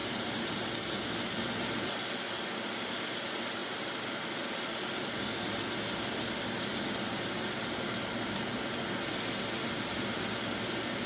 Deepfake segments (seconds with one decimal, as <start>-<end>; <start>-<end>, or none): 0.0-0.5